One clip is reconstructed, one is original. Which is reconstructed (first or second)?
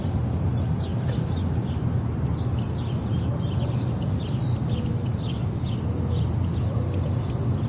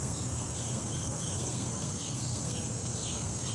second